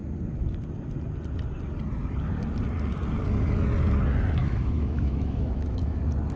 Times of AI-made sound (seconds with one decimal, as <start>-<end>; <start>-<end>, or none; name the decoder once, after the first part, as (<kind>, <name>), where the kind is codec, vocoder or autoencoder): 4.4-6.0 (autoencoder, DAC-VAE)